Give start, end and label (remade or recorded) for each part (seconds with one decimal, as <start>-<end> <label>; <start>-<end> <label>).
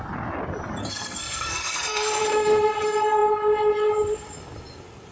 0.0-0.8 recorded; 0.8-2.2 remade; 2.2-5.1 recorded